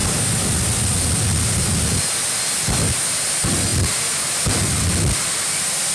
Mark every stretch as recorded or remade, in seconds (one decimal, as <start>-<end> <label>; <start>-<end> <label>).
0.0-5.9 recorded

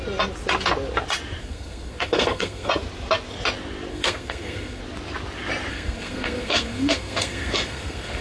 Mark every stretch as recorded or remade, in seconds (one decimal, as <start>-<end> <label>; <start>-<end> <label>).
0.0-1.4 recorded; 1.4-2.7 remade; 2.7-3.9 recorded; 3.9-4.8 remade; 4.8-5.7 recorded; 5.7-8.2 remade

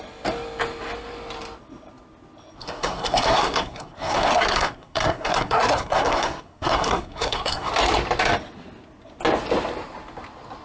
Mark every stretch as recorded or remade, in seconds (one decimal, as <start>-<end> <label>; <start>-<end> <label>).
0.0-2.6 recorded; 2.6-7.7 remade; 7.7-10.6 recorded

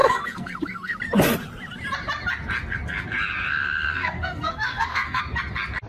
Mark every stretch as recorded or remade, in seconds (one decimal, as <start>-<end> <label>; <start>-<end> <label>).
0.0-1.0 remade; 1.0-3.5 recorded; 3.5-5.2 remade; 5.2-5.9 recorded

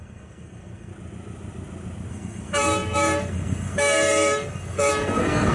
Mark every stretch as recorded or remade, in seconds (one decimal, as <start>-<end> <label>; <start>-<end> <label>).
0.0-0.9 remade; 0.9-2.1 recorded; 2.1-5.5 remade

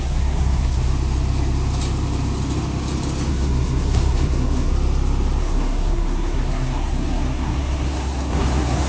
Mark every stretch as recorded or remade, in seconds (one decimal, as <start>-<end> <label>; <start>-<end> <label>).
0.0-0.9 remade; 0.9-3.3 recorded; 3.3-4.7 remade; 4.7-5.4 recorded; 5.4-8.9 remade

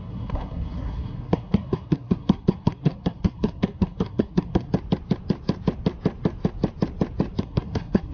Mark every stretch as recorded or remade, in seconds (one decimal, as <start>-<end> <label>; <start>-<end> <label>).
0.0-4.7 remade; 4.7-7.4 recorded; 7.4-8.1 remade

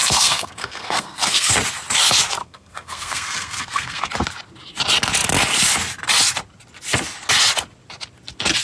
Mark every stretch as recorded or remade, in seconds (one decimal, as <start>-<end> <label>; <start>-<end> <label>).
0.0-1.5 remade; 1.5-2.4 recorded; 2.4-4.1 remade; 4.1-8.6 recorded